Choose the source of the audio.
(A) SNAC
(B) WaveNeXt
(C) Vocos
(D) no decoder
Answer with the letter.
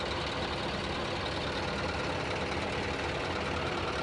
D